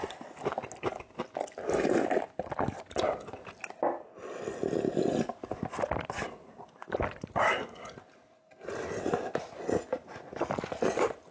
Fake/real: real